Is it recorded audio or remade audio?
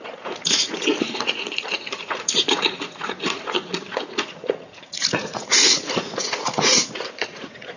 remade